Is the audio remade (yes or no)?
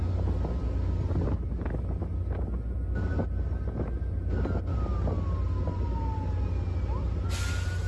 no